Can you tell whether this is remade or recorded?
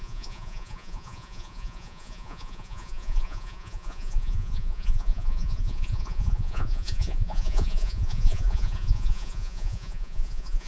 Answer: remade